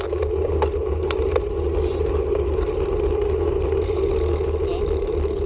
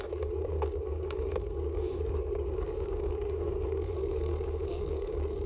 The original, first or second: first